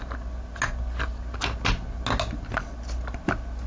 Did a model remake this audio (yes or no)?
no